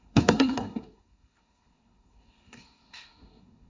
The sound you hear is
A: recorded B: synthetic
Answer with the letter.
B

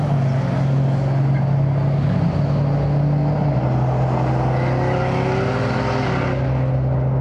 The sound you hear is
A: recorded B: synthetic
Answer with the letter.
A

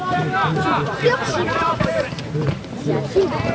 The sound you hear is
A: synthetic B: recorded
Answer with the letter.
A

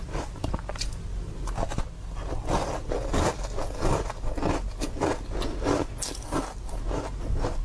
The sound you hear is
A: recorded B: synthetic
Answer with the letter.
A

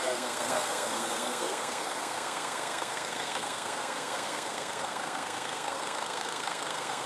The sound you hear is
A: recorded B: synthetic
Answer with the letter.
B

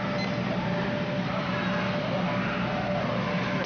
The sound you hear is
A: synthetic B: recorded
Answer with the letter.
B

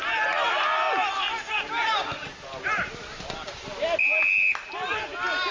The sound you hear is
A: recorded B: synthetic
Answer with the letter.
A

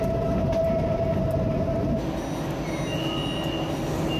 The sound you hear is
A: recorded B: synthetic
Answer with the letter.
A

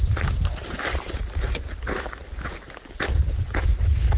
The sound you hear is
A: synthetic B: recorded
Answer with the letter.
B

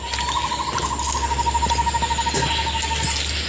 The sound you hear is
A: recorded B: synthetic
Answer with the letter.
B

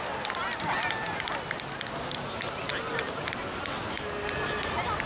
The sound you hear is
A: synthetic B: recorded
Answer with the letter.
B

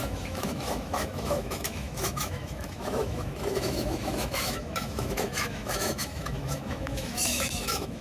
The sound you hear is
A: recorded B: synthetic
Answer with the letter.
B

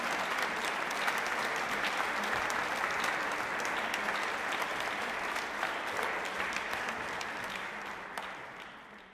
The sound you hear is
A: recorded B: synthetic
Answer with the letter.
A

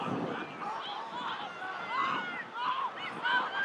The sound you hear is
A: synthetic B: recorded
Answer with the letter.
B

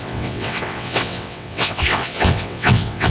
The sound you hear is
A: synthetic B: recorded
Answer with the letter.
A